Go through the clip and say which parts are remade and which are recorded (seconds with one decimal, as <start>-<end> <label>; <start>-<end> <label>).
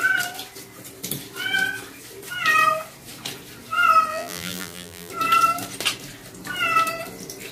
0.0-4.1 recorded; 4.1-5.1 remade; 5.1-7.5 recorded